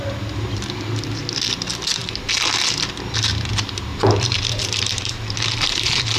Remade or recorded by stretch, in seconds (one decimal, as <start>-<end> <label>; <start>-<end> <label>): 0.0-2.0 recorded; 2.0-2.5 remade; 2.5-3.9 recorded; 3.9-6.2 remade